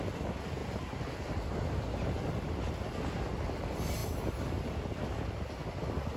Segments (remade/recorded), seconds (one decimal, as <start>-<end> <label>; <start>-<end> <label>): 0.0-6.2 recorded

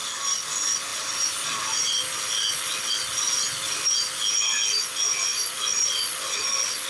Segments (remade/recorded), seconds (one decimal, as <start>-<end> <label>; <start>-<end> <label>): 0.0-5.3 recorded; 5.3-6.3 remade; 6.3-6.9 recorded

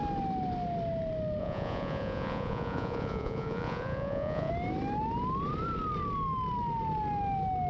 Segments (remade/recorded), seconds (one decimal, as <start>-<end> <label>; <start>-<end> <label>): 0.0-1.4 recorded; 1.4-4.5 remade; 4.5-7.7 recorded

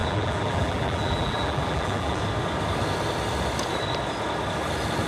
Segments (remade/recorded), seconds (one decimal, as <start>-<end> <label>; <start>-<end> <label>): 0.0-2.2 remade; 2.2-5.1 recorded

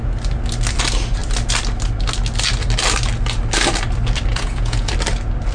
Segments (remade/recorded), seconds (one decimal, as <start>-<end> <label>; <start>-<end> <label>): 0.0-4.3 recorded; 4.3-4.9 remade; 4.9-5.5 recorded

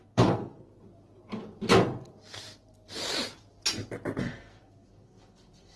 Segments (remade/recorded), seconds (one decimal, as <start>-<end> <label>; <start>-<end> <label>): 0.0-0.7 remade; 0.7-4.2 recorded; 4.2-5.8 remade

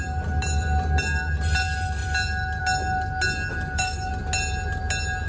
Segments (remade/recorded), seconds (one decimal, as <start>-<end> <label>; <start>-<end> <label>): 0.0-3.5 recorded; 3.5-4.1 remade; 4.1-5.3 recorded

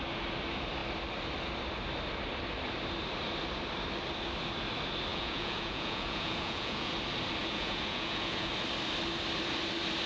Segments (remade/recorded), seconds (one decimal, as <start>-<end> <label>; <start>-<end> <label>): 0.0-5.1 recorded; 5.1-6.9 remade; 6.9-7.4 recorded; 7.4-8.5 remade; 8.5-10.1 recorded